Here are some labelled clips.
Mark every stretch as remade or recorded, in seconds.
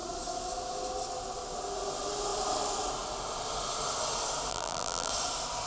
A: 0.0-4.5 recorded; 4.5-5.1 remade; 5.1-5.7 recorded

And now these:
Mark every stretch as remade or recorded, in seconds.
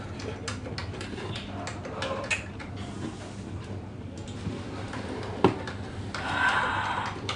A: 0.0-7.4 recorded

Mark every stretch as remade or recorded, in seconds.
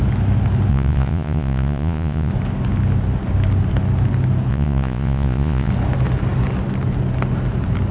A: 0.0-0.7 recorded; 0.7-2.3 remade; 2.3-4.5 recorded; 4.5-5.7 remade; 5.7-7.9 recorded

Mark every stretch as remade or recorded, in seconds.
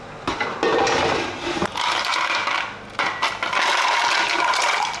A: 0.0-1.7 recorded; 1.7-2.5 remade; 2.5-5.0 recorded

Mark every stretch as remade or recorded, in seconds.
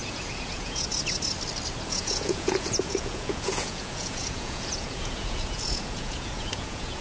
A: 0.0-0.9 remade; 0.9-1.9 recorded; 1.9-7.0 remade